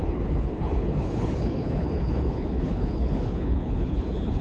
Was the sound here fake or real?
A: fake